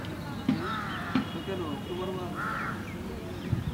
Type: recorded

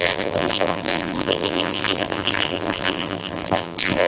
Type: remade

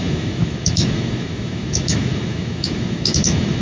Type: remade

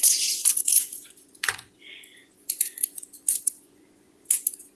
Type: remade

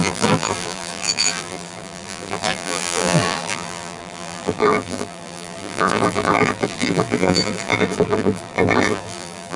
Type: remade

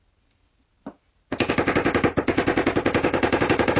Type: recorded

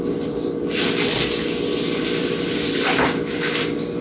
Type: recorded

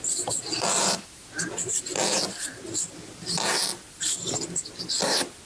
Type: recorded